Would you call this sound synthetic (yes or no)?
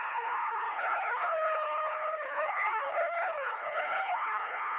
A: yes